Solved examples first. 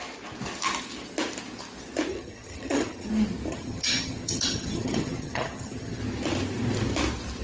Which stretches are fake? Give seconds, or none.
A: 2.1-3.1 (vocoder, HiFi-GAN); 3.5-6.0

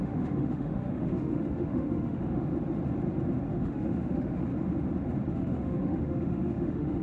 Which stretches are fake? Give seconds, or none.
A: 0.0-2.5 (autoencoder, DAC-VAE); 3.5-4.5; 5.3-7.0

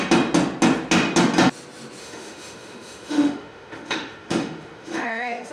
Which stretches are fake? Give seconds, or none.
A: 2.0-5.5 (autoencoder, DAC-VAE)

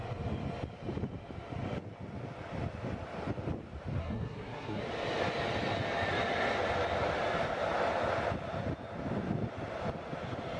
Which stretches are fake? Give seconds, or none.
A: 4.0-4.8 (codec, SNAC)

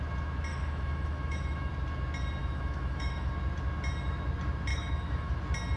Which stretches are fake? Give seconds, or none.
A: 0.5-1.7 (autoencoder, DAC-VAE); 2.4-3.3; 4.7-5.3

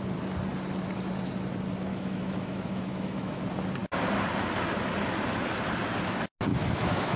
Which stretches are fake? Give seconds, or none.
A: 1.9-3.4 (autoencoder, DAC-VAE); 6.5-7.2

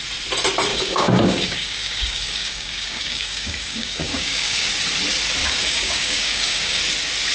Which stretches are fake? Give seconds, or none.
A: 0.7-4.7 (codec, DAC); 5.4-6.8

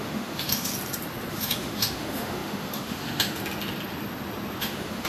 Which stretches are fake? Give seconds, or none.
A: 0.0-0.7 (autoencoder, DAC-VAE); 1.3-3.4; 4.6-5.1